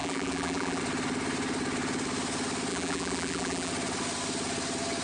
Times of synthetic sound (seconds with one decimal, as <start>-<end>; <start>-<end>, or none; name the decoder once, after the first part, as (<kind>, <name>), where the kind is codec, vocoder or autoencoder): 0.0-0.8 (vocoder, BigVGAN v2); 2.7-3.7